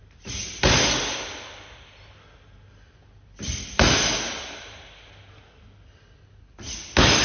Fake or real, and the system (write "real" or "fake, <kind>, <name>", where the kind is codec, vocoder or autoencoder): real